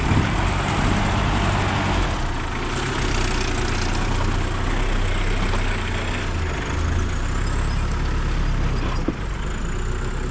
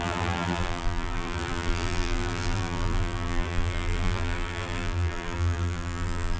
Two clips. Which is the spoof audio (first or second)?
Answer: second